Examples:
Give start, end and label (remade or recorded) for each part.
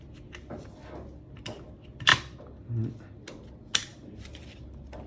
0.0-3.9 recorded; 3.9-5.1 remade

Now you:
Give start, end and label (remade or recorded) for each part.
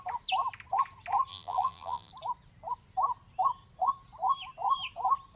0.0-1.3 recorded; 1.3-2.1 remade; 2.1-5.4 recorded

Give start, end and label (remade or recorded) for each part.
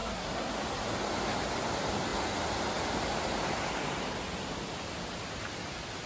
0.0-0.5 remade; 0.5-6.1 recorded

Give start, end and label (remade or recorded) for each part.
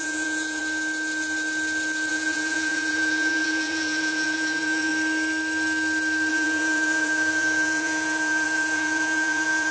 0.0-0.6 remade; 0.6-2.1 recorded; 2.1-4.9 remade; 4.9-6.3 recorded; 6.3-9.7 remade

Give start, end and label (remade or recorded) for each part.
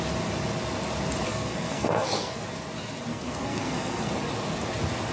0.0-1.3 recorded; 1.3-2.4 remade; 2.4-3.1 recorded; 3.1-4.1 remade; 4.1-5.1 recorded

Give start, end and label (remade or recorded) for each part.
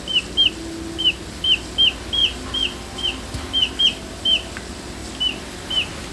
0.0-2.2 recorded; 2.2-4.5 remade; 4.5-5.0 recorded; 5.0-6.1 remade